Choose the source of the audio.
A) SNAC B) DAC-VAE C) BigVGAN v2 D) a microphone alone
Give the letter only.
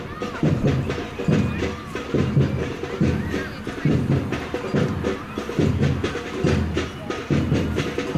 D